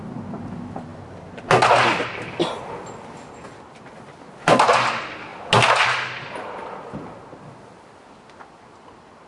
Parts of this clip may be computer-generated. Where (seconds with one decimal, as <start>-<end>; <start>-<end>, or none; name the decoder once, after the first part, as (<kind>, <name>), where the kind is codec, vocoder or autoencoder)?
none

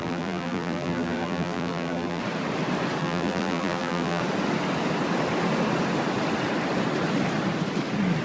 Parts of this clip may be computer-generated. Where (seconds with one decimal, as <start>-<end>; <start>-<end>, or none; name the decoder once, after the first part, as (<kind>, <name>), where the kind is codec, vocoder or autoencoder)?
0.0-2.2 (vocoder, BigVGAN v2); 3.0-4.2